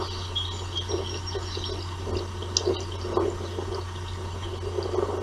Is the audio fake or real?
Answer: real